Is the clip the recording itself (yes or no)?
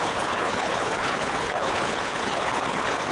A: no